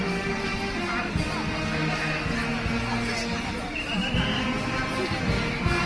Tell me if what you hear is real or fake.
real